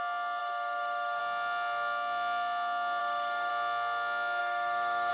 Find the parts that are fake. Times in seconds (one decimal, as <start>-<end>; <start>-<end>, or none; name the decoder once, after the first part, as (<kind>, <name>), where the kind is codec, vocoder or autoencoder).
0.4-1.2 (autoencoder, DAC-VAE); 3.0-3.5; 4.4-5.1